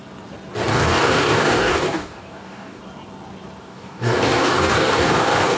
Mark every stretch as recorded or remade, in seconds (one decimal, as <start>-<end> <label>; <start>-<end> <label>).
0.0-0.7 recorded; 0.7-2.8 remade; 2.8-3.6 recorded; 3.6-5.6 remade